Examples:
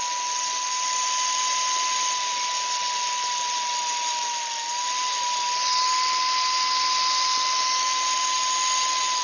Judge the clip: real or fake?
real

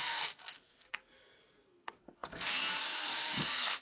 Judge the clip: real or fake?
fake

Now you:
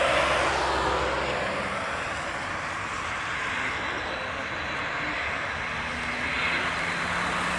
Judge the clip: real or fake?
real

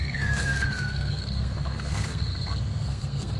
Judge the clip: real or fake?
fake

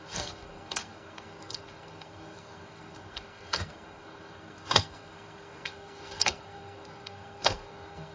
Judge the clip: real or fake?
fake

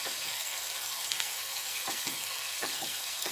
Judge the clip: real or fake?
fake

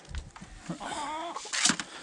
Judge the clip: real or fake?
real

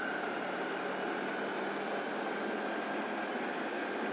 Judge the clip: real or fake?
real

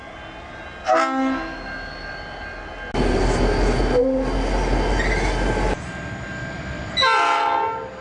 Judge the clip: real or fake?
real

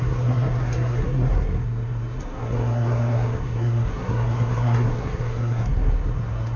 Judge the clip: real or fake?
fake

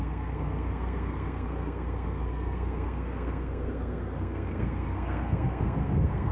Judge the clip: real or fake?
fake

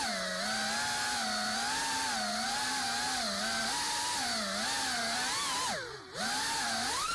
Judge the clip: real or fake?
real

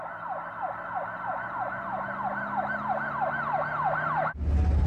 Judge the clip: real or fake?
real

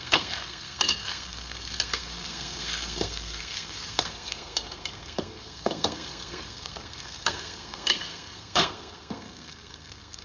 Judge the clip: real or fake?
fake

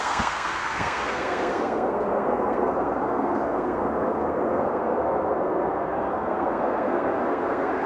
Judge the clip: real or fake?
fake